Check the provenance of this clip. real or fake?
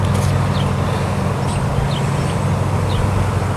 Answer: real